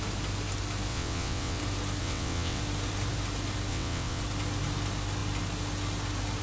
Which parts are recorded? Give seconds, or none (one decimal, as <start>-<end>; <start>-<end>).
0.0-0.9; 1.6-2.0; 2.6-3.7; 4.2-6.4